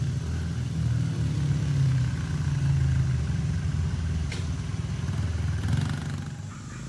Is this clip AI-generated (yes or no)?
no